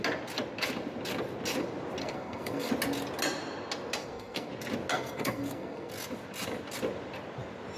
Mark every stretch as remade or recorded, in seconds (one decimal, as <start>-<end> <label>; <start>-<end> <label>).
0.0-2.0 recorded; 2.0-2.7 remade; 2.7-4.0 recorded; 4.0-4.5 remade; 4.5-4.9 recorded; 4.9-5.9 remade; 5.9-7.8 recorded